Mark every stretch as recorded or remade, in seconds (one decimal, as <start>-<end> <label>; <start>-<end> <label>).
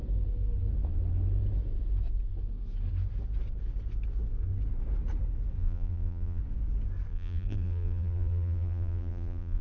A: 0.0-5.6 recorded; 5.6-6.4 remade; 6.4-7.1 recorded; 7.1-9.6 remade